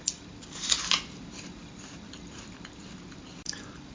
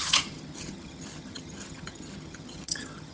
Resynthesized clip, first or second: second